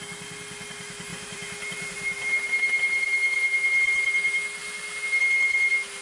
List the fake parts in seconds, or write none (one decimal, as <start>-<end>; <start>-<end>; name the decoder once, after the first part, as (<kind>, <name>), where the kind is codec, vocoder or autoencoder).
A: 1.1-2.3 (vocoder, BigVGAN v2)